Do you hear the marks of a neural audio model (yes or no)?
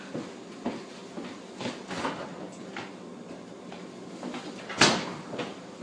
no